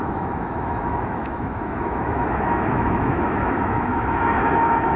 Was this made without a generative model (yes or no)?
no